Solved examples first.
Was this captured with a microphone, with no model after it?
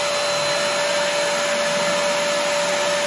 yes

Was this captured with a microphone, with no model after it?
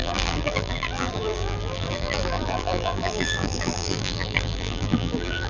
no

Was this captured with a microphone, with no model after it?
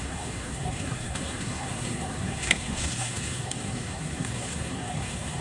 no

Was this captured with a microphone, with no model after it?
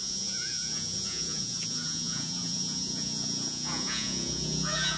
no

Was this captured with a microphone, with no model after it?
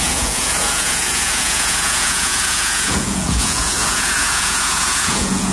no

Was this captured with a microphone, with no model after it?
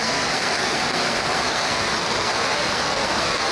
no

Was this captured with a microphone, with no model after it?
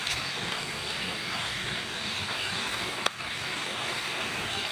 no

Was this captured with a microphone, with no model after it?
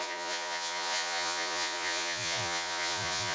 no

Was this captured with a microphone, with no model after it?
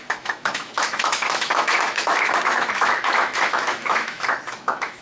no